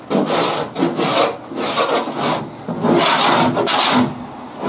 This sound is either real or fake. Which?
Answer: real